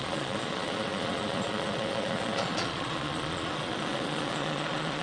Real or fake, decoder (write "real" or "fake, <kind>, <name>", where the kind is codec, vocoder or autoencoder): fake, vocoder, Vocos